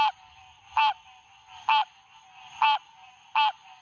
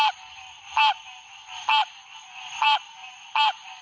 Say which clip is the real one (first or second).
first